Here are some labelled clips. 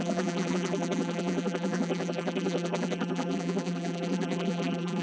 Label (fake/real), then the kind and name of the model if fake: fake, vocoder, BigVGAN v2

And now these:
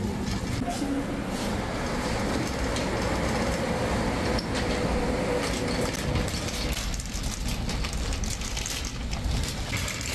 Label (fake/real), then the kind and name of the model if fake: real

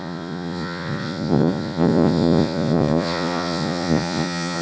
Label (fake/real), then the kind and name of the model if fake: fake, vocoder, Vocos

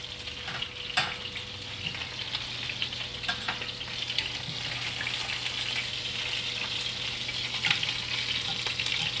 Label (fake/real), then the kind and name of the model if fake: real